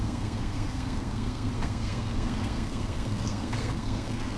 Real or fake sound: fake